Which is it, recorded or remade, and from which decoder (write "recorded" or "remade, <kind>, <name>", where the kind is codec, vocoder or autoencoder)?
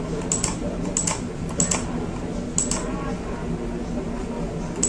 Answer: recorded